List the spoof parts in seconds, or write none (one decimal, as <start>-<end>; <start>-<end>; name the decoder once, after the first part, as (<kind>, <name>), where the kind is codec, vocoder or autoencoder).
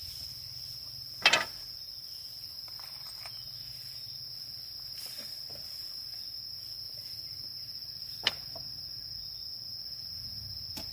none